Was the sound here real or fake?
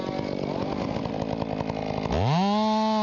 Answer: real